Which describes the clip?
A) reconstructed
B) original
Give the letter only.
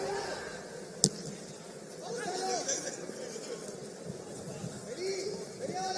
B